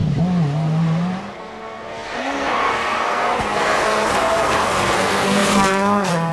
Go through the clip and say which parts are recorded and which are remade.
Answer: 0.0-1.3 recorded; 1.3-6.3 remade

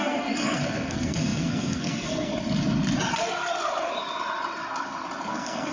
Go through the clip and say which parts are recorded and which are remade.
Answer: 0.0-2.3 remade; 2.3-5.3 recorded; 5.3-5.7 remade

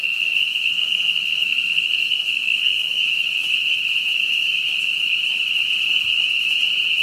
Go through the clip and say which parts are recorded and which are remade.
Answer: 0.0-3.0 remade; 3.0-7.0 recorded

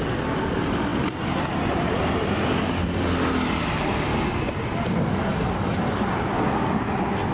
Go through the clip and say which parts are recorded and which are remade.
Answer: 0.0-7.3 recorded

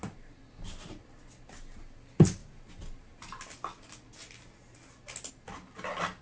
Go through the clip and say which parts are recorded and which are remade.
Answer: 0.0-6.2 recorded

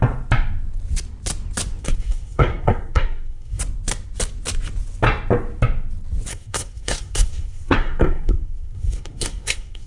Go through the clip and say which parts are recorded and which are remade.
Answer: 0.0-1.8 recorded; 1.8-3.6 remade; 3.6-6.3 recorded; 6.3-9.9 remade

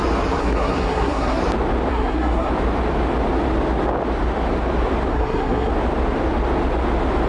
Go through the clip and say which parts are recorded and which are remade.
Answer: 0.0-0.4 recorded; 0.4-1.4 remade; 1.4-1.9 recorded; 1.9-2.5 remade; 2.5-5.1 recorded; 5.1-5.7 remade; 5.7-7.3 recorded